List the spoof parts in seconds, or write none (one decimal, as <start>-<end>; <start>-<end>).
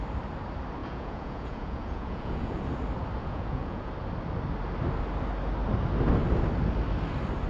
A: 0.8-2.6; 3.2-3.9